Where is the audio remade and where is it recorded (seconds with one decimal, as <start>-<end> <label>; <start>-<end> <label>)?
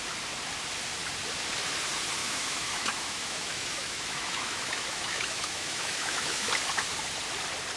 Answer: 0.0-2.2 recorded; 2.2-6.5 remade; 6.5-7.8 recorded